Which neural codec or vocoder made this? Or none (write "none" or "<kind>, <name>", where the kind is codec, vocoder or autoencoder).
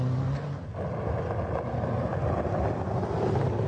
none